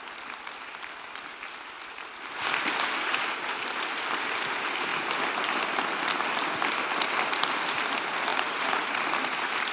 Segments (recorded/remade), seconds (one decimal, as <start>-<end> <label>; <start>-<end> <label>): 0.0-8.3 recorded; 8.3-9.0 remade; 9.0-9.7 recorded